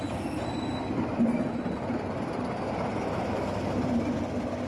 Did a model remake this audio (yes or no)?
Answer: no